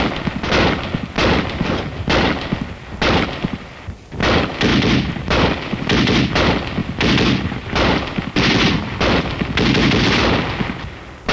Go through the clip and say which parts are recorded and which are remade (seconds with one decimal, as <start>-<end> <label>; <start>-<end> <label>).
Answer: 0.0-4.7 recorded; 4.7-6.3 remade; 6.3-11.3 recorded